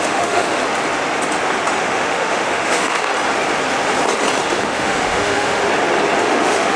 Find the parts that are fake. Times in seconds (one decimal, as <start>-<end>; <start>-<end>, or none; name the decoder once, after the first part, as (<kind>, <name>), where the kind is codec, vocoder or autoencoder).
0.0-0.6 (autoencoder, DAC-VAE); 1.8-3.1; 4.4-5.6; 6.2-6.8